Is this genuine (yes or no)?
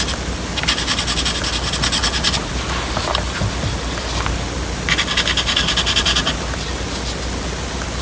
yes